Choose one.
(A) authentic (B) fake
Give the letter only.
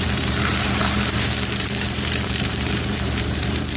B